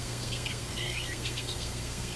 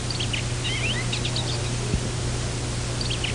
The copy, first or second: first